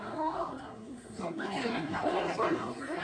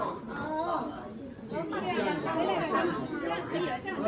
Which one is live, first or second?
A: second